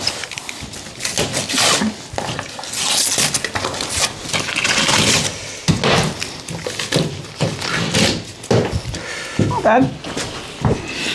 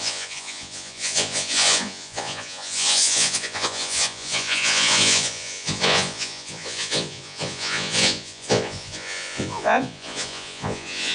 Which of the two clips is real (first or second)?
first